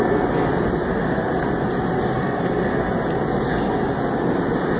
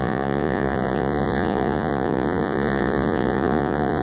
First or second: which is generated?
second